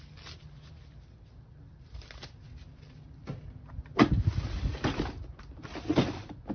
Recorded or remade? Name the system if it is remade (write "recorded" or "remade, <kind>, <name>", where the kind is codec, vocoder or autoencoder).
recorded